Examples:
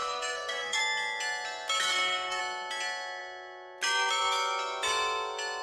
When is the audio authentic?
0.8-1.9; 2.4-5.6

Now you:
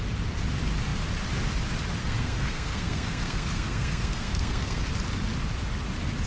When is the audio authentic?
0.0-2.0; 4.9-6.3